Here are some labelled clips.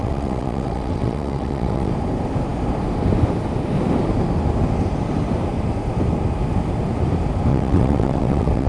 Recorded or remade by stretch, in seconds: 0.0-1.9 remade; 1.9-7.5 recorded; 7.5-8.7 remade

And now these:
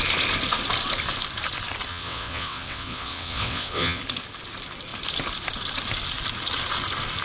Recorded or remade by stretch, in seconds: 0.0-1.9 recorded; 1.9-4.0 remade; 4.0-7.2 recorded

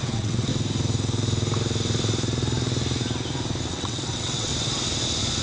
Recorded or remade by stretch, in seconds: 0.0-0.5 remade; 0.5-3.7 recorded; 3.7-4.5 remade; 4.5-5.4 recorded

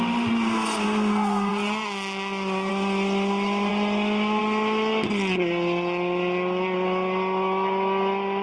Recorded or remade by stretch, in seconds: 0.0-8.4 recorded

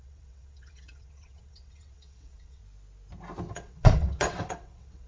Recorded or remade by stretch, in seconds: 0.0-2.6 remade; 2.6-3.5 recorded; 3.5-5.1 remade